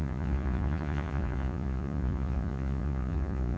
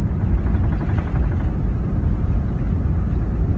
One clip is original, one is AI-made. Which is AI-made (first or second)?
first